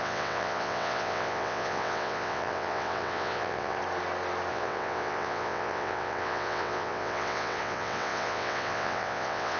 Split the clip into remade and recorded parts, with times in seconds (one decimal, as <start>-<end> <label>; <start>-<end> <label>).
0.0-3.8 remade; 3.8-4.5 recorded; 4.5-9.6 remade